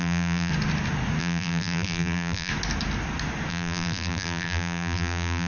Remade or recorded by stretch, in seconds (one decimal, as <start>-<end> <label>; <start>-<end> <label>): 0.0-0.5 remade; 0.5-1.2 recorded; 1.2-2.5 remade; 2.5-3.5 recorded; 3.5-5.5 remade